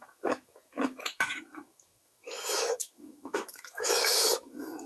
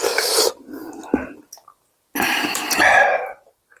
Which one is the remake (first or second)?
first